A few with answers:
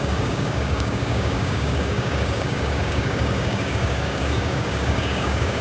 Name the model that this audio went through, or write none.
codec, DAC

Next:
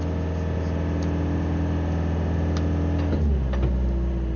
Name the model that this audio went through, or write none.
none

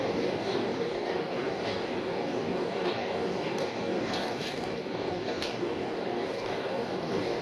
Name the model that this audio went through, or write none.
codec, DAC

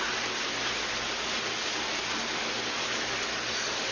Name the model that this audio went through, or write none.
none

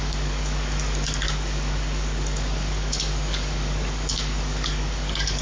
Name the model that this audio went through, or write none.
codec, DAC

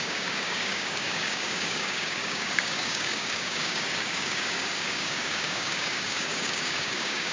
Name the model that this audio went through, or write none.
codec, DAC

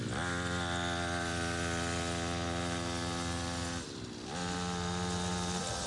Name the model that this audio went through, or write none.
none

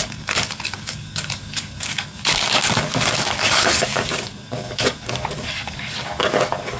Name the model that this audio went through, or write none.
codec, DAC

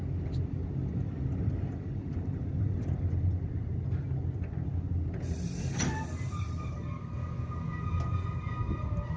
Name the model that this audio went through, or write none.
none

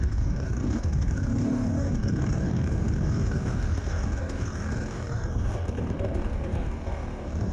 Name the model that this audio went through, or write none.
codec, DAC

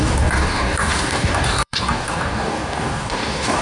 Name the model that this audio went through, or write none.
codec, DAC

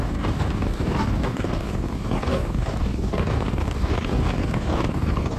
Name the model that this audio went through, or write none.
codec, DAC